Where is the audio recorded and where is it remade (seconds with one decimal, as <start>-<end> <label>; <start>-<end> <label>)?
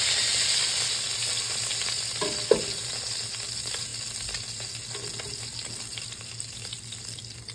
0.0-7.5 recorded